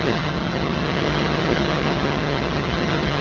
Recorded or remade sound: remade